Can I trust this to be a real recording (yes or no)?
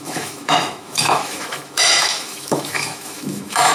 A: no